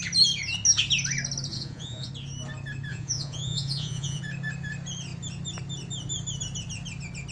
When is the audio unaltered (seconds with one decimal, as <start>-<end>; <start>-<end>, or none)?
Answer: 0.0-1.5; 2.1-2.9; 4.2-7.3